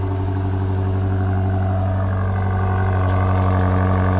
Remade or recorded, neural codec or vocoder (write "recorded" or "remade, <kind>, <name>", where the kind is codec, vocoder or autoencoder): recorded